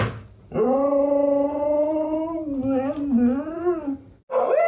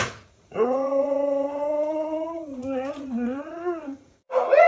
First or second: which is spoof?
second